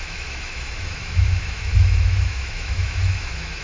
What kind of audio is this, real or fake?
fake